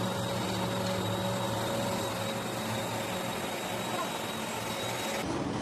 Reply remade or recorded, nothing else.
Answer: recorded